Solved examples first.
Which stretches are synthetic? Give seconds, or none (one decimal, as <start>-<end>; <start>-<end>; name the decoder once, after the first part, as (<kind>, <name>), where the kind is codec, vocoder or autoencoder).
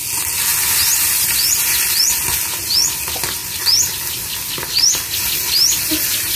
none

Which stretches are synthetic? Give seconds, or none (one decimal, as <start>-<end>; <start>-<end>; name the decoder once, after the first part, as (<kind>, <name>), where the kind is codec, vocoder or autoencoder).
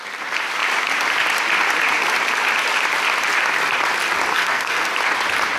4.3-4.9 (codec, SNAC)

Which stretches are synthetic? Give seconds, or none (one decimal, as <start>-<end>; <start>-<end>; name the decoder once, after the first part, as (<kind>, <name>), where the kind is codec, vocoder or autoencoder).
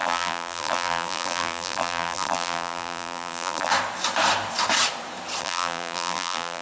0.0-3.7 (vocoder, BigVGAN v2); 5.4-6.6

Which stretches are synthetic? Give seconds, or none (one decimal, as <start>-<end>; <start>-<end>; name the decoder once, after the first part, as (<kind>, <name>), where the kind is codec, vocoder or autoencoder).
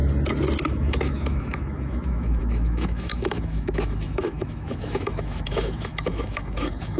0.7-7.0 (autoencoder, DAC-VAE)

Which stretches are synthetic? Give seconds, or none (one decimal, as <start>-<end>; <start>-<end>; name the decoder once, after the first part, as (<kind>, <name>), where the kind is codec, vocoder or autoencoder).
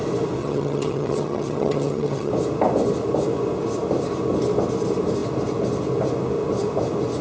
0.4-2.3 (vocoder, HiFi-GAN)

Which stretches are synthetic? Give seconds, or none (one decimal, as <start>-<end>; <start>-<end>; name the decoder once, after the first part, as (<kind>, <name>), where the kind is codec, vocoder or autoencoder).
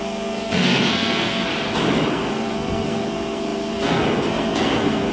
0.0-1.5 (codec, SNAC); 2.1-5.1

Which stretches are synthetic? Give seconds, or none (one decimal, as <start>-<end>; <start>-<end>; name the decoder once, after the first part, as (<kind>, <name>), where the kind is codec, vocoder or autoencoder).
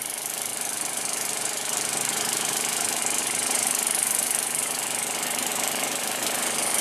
0.0-6.8 (codec, DAC)